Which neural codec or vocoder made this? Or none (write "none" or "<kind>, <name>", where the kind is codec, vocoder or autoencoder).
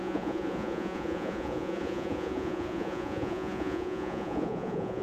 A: vocoder, Vocos